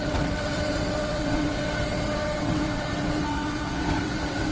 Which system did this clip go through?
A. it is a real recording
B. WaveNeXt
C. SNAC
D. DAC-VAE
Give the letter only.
B